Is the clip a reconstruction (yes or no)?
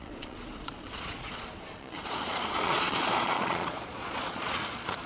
yes